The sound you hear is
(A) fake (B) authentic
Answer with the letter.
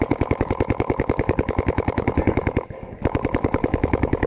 A